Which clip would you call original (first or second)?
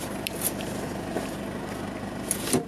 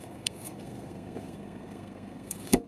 first